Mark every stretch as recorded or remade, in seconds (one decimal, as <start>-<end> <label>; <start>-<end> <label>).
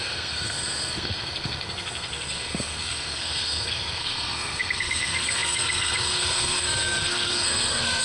0.0-8.0 remade